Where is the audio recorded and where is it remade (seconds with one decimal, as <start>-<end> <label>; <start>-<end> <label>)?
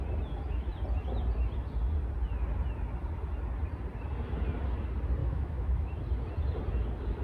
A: 0.0-5.2 recorded; 5.2-6.0 remade; 6.0-7.2 recorded